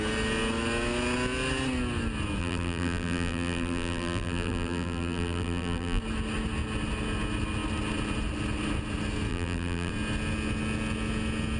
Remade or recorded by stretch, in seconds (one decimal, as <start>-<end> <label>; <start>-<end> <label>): 0.0-2.4 recorded; 2.4-6.0 remade; 6.0-9.3 recorded; 9.3-9.9 remade; 9.9-11.6 recorded